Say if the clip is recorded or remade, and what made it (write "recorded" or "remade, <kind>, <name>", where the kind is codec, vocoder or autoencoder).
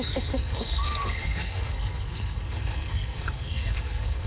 remade, codec, SNAC